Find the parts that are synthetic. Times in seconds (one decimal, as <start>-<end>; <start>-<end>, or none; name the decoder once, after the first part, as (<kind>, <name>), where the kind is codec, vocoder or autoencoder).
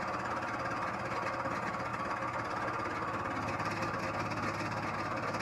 none